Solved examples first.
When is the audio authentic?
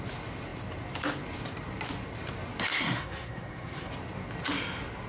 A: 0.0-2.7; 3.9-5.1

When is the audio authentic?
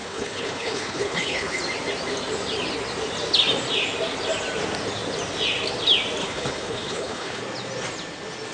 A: 1.6-6.2; 7.4-8.5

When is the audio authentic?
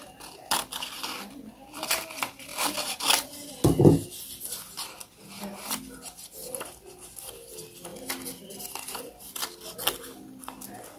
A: 0.0-11.0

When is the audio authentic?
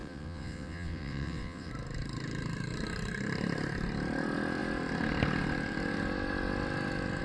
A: 1.7-7.2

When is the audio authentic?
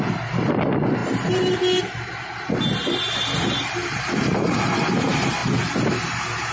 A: 0.0-6.5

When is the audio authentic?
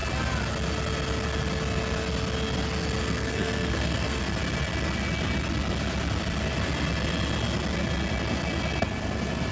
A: 0.0-3.0; 4.2-9.5